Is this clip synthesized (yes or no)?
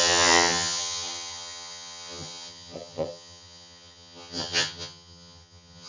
yes